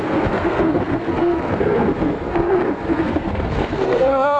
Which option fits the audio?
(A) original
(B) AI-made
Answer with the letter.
B